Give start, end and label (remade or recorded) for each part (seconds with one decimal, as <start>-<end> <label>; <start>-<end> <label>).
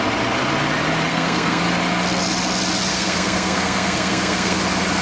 0.0-1.1 recorded; 1.1-1.6 remade; 1.6-2.9 recorded; 2.9-4.6 remade; 4.6-5.0 recorded